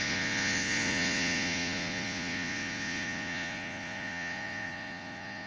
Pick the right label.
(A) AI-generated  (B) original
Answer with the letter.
A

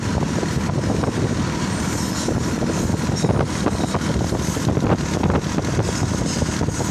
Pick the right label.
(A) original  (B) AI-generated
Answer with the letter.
A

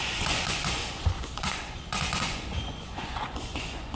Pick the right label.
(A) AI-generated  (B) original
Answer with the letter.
A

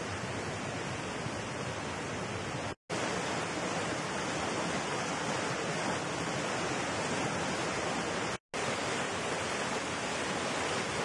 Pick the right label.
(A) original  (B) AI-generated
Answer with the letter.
A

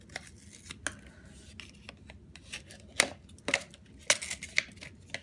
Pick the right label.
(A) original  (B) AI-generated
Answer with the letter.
A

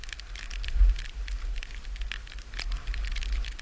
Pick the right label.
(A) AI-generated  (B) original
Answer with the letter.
B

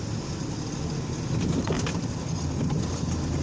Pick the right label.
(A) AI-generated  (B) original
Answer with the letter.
B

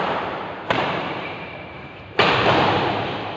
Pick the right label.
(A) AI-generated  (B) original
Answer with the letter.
A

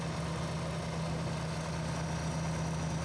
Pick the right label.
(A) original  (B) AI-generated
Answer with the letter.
A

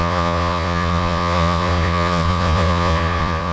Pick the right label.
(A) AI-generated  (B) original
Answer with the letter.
A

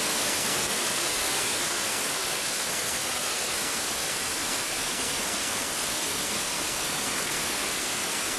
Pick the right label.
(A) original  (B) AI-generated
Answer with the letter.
B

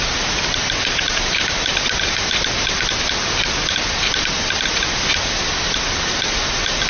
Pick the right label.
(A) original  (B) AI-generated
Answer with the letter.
A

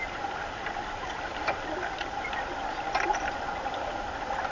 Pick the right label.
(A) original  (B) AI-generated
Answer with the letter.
A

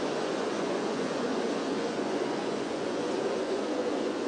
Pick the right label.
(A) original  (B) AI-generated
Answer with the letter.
B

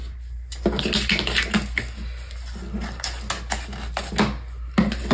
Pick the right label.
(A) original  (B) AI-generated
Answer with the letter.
A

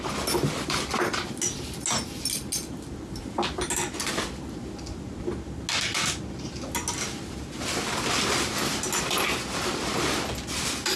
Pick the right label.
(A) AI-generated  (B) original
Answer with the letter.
B